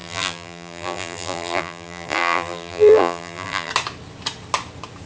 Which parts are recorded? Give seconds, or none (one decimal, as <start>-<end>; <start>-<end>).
3.7-5.1